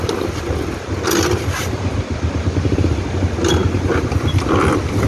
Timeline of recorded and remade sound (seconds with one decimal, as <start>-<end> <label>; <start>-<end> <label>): 0.0-5.1 recorded